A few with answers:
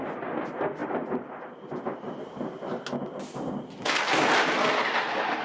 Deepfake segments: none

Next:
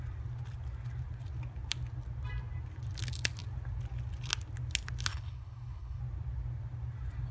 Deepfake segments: 5.1-6.0 (codec, HILCodec)

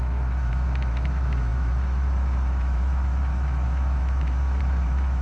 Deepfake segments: 0.0-5.2 (autoencoder, DAC-VAE)

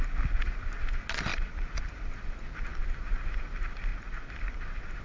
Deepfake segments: 1.3-2.8 (vocoder, BigVGAN v2); 3.9-5.0

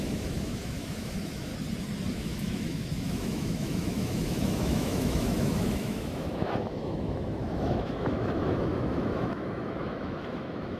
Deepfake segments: 0.0-1.5 (autoencoder, DAC-VAE); 2.1-10.8

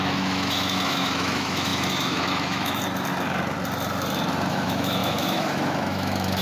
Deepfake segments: 0.0-2.8 (autoencoder, DAC-VAE); 4.5-6.4